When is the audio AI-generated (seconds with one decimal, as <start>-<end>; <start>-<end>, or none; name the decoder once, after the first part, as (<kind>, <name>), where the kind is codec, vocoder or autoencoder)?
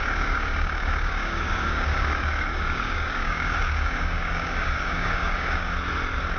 0.0-5.7 (codec, DAC)